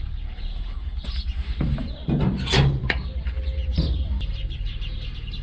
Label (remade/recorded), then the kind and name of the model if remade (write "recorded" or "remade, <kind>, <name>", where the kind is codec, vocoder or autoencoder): remade, vocoder, BigVGAN v2